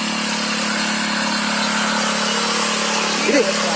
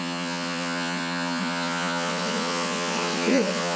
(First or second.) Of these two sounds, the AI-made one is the second